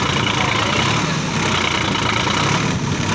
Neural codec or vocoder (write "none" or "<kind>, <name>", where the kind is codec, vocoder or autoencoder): none